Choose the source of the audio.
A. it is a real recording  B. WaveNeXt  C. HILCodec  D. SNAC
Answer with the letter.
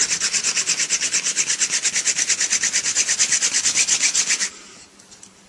A